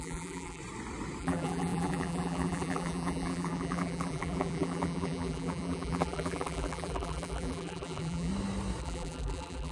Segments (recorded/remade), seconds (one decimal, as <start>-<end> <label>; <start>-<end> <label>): 0.0-0.6 remade; 0.6-1.2 recorded; 1.2-8.3 remade; 8.3-8.8 recorded; 8.8-9.7 remade